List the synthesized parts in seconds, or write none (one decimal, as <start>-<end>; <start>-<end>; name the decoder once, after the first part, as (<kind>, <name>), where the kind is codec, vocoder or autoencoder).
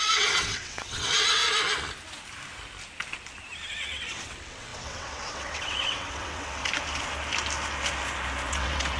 0.0-1.4 (vocoder, WaveNeXt); 3.7-6.6; 8.5-9.0